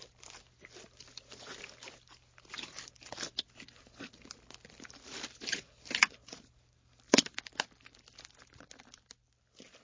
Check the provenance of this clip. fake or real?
real